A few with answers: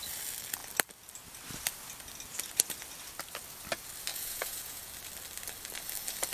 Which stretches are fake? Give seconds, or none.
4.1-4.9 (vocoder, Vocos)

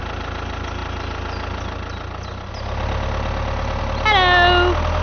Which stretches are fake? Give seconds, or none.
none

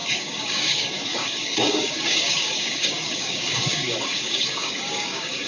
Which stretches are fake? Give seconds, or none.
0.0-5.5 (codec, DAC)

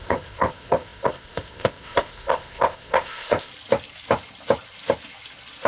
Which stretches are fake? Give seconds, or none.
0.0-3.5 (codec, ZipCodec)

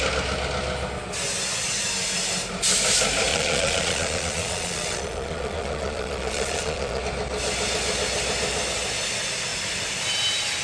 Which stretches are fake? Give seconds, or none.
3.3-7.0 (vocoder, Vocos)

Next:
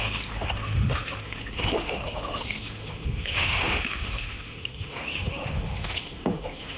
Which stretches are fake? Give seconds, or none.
0.0-6.8 (autoencoder, DAC-VAE)